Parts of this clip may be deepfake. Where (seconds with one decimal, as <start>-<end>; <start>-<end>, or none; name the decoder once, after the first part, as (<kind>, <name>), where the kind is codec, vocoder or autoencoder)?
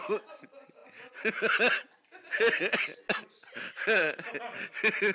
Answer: none